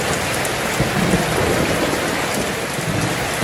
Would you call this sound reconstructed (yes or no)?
no